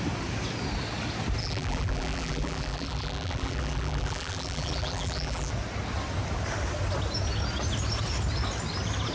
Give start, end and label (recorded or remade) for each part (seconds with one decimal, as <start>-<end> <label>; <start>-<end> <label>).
0.0-1.4 recorded; 1.4-5.5 remade; 5.5-9.1 recorded